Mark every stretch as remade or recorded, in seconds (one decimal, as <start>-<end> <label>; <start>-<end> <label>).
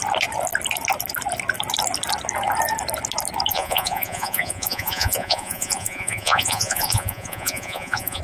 0.0-3.5 recorded; 3.5-8.2 remade